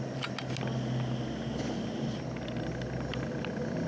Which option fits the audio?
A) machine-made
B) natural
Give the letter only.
B